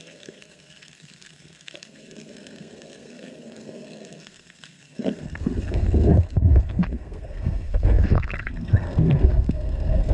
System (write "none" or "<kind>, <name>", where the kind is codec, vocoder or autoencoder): codec, SNAC